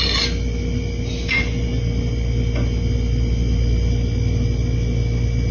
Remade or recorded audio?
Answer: recorded